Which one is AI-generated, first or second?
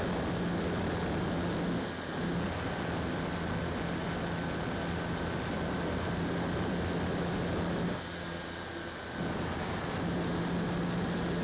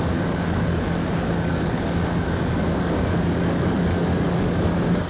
second